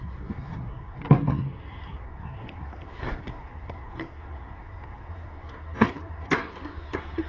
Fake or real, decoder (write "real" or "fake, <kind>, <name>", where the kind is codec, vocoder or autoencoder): fake, codec, SNAC